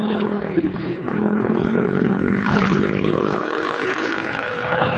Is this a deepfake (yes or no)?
yes